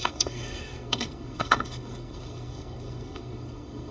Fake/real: fake